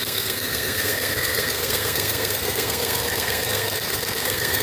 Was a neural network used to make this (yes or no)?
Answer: yes